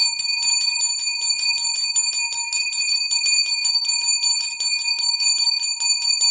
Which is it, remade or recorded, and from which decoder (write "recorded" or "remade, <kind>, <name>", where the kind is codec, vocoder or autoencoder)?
recorded